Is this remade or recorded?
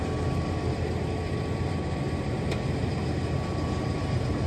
recorded